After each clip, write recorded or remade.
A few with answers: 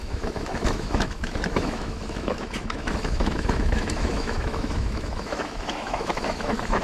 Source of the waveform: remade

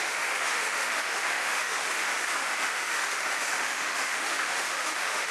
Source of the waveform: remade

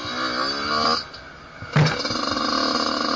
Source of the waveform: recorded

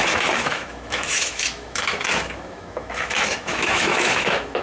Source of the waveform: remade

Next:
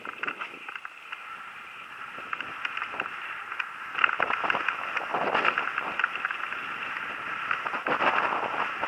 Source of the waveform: recorded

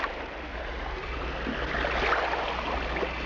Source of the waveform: recorded